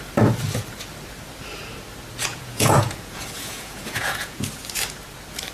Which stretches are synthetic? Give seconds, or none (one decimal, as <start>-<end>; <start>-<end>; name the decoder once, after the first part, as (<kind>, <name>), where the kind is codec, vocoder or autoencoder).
2.3-4.5 (vocoder, Vocos)